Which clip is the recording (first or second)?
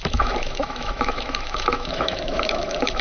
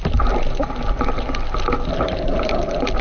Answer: second